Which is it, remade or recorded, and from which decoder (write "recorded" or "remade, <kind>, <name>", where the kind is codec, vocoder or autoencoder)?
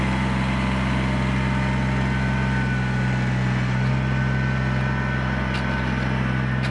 recorded